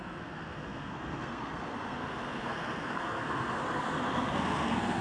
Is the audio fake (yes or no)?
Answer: yes